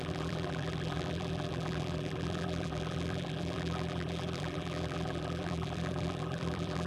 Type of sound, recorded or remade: remade